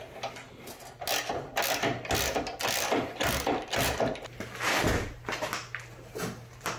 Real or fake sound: real